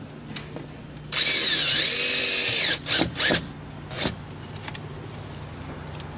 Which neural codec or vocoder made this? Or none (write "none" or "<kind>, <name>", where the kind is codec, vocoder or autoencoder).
none